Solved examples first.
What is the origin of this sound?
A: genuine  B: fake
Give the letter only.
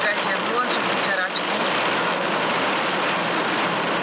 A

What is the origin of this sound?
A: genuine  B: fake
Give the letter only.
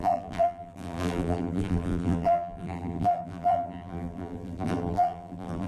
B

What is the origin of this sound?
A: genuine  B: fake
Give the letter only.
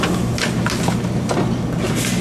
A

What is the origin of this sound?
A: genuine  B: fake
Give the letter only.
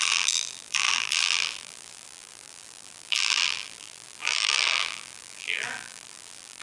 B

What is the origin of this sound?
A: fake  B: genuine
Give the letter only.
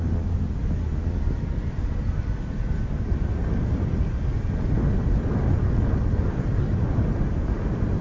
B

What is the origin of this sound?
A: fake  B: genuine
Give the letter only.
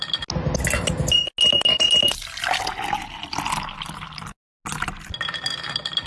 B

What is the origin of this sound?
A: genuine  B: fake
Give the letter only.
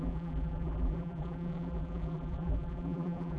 B